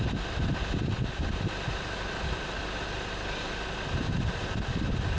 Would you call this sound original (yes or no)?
yes